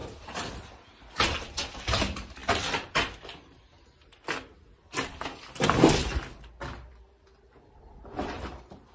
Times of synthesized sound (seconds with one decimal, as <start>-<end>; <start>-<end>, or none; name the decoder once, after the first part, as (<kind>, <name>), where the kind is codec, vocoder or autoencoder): 0.0-0.5 (vocoder, Vocos)